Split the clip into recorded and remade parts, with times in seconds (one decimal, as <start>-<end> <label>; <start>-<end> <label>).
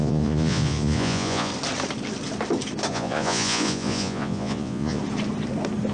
0.0-1.5 remade; 1.5-2.9 recorded; 2.9-5.0 remade; 5.0-5.9 recorded